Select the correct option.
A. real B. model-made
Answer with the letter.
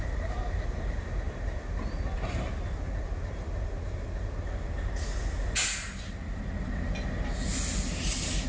A